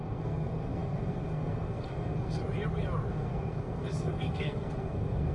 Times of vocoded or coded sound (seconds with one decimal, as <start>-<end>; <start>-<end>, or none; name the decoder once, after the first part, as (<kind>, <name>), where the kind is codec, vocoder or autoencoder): 0.0-2.4 (codec, SNAC); 3.1-5.3